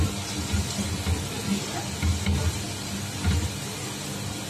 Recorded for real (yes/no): yes